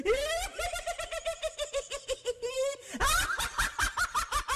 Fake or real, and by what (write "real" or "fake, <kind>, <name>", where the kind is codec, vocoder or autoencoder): real